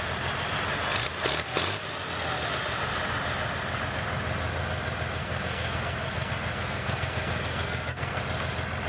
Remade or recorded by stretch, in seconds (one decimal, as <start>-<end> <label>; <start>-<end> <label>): 0.0-5.2 recorded; 5.2-8.2 remade; 8.2-8.9 recorded